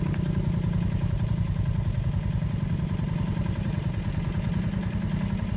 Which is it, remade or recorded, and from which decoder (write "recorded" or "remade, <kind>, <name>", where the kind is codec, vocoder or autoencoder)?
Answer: recorded